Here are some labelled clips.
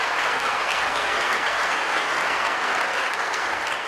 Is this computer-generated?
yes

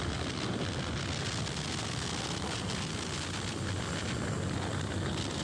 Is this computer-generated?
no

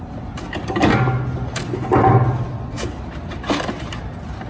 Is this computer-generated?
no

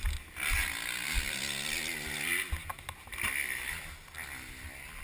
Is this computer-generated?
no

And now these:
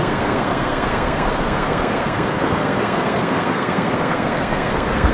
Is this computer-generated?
yes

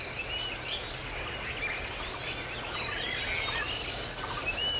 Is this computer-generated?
no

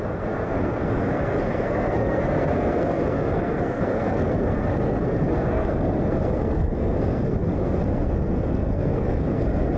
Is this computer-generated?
yes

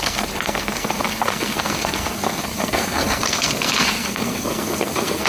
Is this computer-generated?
yes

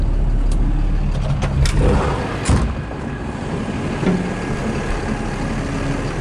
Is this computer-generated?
no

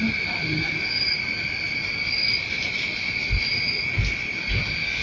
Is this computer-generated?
no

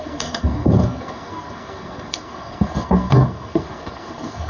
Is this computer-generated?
yes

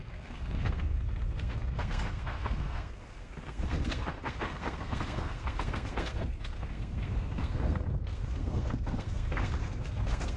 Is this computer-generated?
yes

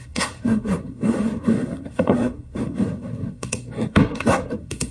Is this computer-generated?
yes